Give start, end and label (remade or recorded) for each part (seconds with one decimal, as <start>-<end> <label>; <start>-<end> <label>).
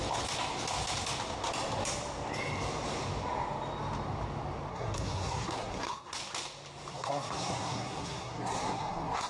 0.0-4.7 recorded; 4.7-6.2 remade; 6.2-6.9 recorded; 6.9-9.3 remade